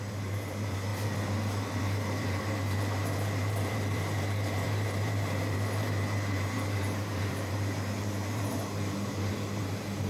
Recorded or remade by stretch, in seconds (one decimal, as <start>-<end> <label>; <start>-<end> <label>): 0.0-0.9 remade; 0.9-1.8 recorded; 1.8-10.1 remade